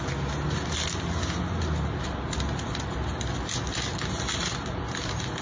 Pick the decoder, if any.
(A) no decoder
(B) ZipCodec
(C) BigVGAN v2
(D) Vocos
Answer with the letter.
A